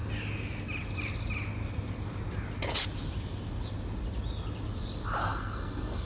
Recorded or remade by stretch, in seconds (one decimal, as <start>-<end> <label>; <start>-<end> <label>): 0.0-5.2 recorded; 5.2-6.1 remade